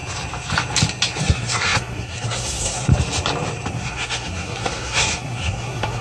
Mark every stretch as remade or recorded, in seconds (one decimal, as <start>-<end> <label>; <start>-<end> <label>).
0.0-1.2 recorded; 1.2-2.9 remade; 2.9-3.7 recorded; 3.7-6.0 remade